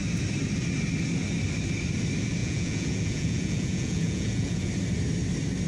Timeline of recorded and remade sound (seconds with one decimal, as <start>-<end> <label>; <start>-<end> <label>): 0.0-2.4 recorded; 2.4-4.7 remade; 4.7-5.7 recorded